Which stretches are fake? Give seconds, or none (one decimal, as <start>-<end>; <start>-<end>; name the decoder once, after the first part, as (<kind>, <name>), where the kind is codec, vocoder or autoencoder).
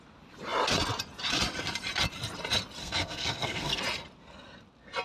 2.8-3.8 (codec, SNAC)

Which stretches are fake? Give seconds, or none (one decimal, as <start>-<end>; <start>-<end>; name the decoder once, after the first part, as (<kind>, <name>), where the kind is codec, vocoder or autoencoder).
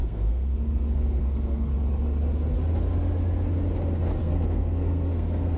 0.0-1.7 (codec, SNAC); 4.2-5.6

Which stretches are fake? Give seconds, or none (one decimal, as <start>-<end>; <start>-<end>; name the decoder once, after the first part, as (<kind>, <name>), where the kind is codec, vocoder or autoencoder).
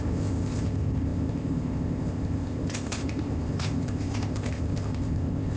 0.0-5.6 (codec, ZipCodec)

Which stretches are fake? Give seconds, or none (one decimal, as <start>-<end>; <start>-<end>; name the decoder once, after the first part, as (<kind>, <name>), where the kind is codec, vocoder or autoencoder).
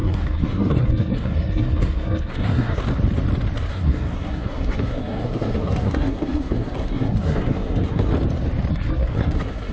0.0-2.8 (codec, SNAC); 3.7-8.1; 8.7-9.7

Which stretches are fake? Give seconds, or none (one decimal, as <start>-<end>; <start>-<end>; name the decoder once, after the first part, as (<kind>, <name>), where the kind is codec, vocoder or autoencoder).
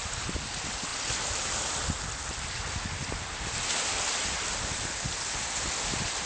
none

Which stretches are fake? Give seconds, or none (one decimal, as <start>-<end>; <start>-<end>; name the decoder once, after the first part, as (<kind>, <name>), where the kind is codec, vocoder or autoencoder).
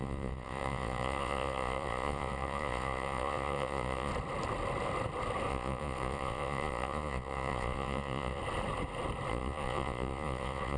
0.0-4.1 (vocoder, Vocos); 5.5-8.4; 9.3-10.8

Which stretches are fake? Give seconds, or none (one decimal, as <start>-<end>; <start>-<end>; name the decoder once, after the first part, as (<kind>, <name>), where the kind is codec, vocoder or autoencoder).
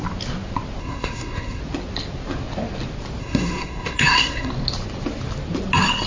0.8-1.6 (codec, SNAC); 3.2-4.5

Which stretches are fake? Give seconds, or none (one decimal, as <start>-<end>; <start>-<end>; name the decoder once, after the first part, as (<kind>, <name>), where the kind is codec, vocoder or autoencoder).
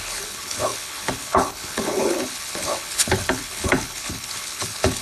0.0-5.0 (codec, HILCodec)